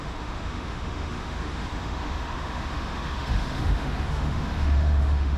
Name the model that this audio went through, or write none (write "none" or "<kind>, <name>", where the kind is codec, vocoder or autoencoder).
autoencoder, DAC-VAE